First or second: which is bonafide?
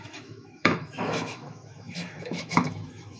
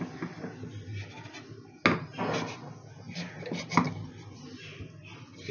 second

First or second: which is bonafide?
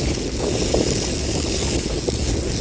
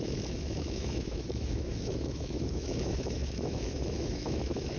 first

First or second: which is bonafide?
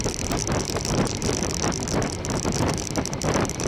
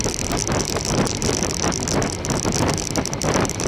second